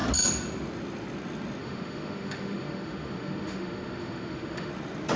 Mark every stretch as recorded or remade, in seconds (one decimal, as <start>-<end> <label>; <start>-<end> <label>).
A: 0.0-1.6 recorded; 1.6-4.7 remade; 4.7-5.2 recorded